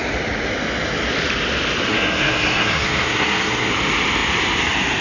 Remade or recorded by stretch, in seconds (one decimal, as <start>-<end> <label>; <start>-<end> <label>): 0.0-1.9 recorded; 1.9-3.7 remade; 3.7-5.0 recorded